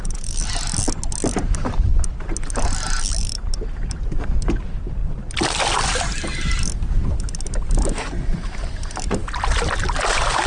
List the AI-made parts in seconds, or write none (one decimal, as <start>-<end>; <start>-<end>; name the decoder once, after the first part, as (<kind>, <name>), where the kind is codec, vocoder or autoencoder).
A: 3.2-3.9 (vocoder, BigVGAN v2); 5.0-6.7